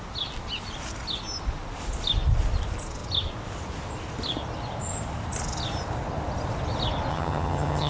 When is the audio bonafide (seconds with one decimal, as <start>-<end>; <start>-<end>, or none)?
0.0-7.1